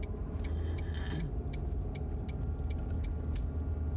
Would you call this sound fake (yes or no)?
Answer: no